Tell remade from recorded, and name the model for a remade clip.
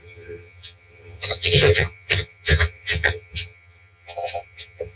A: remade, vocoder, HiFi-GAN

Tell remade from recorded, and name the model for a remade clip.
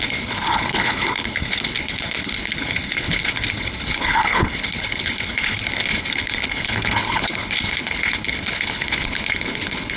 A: remade, codec, HILCodec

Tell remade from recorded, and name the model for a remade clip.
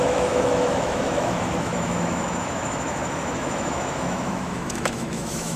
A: remade, autoencoder, DAC-VAE